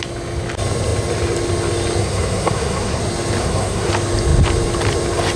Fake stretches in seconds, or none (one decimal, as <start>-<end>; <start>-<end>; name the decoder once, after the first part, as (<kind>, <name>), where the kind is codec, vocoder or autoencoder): 2.0-3.0 (codec, SNAC); 3.4-3.9

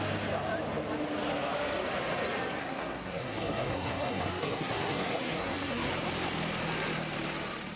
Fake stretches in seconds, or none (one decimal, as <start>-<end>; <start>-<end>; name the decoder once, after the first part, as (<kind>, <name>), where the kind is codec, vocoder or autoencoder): 2.6-5.9 (codec, SNAC)

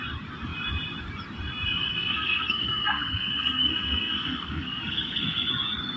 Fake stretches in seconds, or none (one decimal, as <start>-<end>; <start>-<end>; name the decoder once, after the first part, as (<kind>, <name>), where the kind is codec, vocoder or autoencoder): 1.9-5.5 (codec, SNAC)

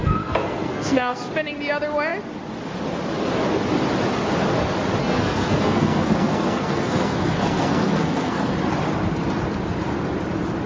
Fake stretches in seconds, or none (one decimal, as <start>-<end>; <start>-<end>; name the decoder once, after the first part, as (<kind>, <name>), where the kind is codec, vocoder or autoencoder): 0.0-1.3 (codec, SNAC); 5.0-8.5

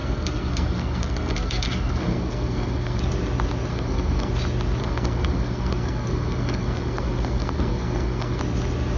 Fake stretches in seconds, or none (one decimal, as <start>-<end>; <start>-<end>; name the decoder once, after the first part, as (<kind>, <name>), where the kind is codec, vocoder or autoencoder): 0.0-3.0 (codec, SNAC); 3.7-4.3; 4.8-8.4

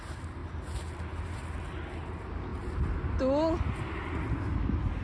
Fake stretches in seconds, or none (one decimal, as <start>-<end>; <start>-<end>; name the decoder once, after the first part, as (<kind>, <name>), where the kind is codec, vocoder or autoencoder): none